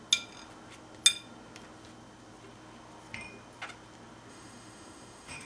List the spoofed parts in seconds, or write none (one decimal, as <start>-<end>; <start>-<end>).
4.3-5.5